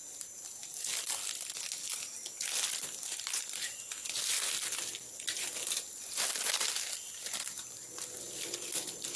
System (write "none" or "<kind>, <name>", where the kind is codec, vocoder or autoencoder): none